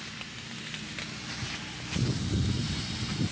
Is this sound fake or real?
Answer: real